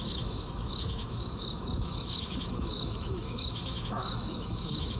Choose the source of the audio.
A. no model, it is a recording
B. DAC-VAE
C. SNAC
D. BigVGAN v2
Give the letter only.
B